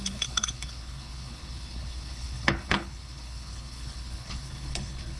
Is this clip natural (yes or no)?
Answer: no